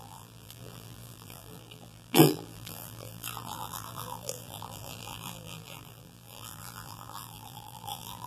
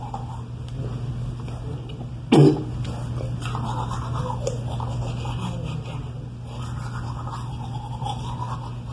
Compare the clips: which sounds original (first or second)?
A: second